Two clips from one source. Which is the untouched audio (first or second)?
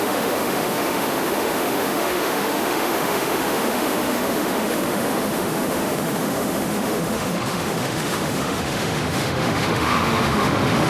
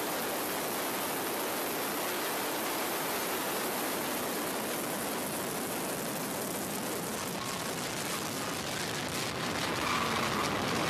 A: second